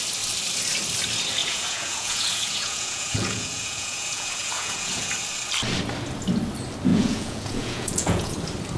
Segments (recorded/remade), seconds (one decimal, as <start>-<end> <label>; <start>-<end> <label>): 0.0-1.4 recorded; 1.4-5.1 remade; 5.1-6.9 recorded; 6.9-8.3 remade; 8.3-8.8 recorded